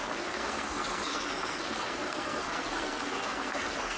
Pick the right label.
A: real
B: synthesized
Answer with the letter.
B